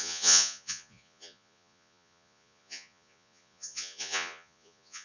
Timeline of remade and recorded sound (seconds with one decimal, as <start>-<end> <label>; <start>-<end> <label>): 0.0-5.0 remade